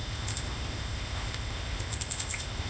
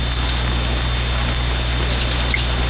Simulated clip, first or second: first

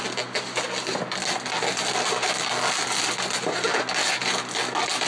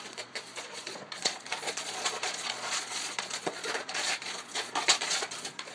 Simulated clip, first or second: second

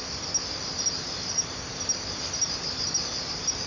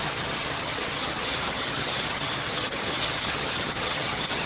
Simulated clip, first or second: second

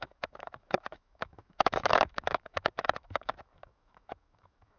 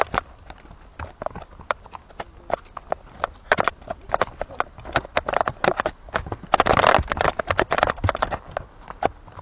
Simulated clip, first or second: first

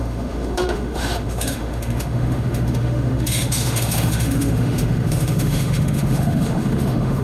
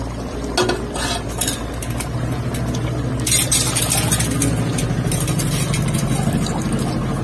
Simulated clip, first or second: first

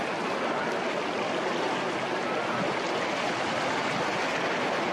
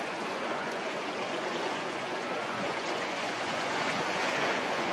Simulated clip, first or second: second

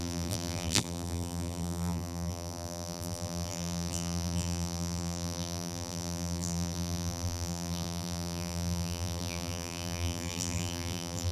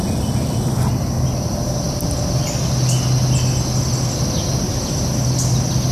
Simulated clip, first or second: first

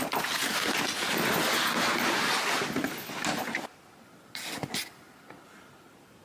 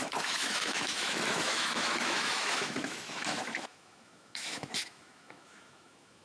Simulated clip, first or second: second